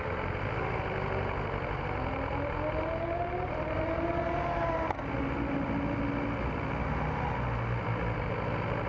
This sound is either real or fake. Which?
real